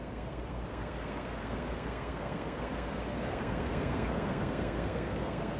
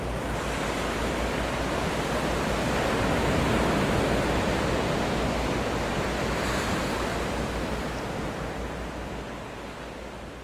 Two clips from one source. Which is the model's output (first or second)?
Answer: first